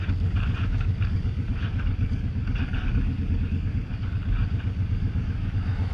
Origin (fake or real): fake